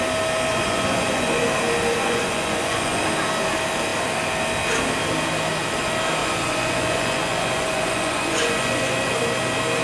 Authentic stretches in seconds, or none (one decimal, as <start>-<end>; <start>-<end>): 0.0-0.5; 1.4-1.9; 3.0-6.2; 9.2-9.8